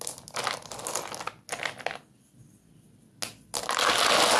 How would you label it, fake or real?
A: real